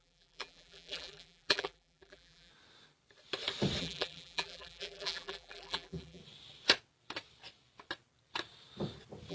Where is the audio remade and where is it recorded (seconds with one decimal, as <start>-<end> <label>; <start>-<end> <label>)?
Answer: 0.0-2.5 remade; 2.5-3.8 recorded; 3.8-6.2 remade; 6.2-9.3 recorded